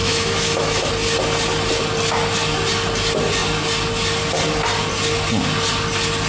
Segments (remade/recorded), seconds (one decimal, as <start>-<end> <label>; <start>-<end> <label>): 0.0-0.9 remade; 0.9-6.3 recorded